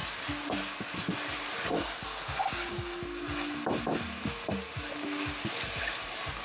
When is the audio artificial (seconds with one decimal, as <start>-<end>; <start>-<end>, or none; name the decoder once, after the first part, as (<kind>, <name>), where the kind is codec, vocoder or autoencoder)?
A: none